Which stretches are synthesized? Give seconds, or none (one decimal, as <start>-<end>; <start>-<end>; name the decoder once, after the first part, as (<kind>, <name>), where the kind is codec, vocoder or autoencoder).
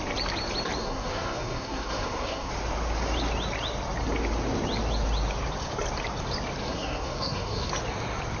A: 0.8-2.5 (codec, SNAC); 6.6-7.7